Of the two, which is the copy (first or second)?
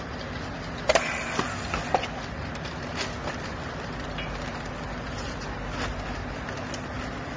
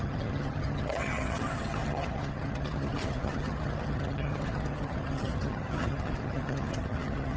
second